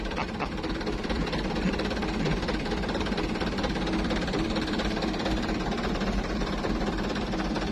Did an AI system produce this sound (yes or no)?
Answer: yes